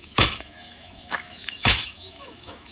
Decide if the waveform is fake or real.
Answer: fake